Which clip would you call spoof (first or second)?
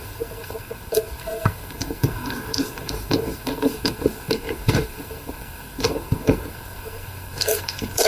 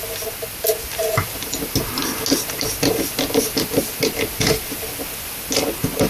first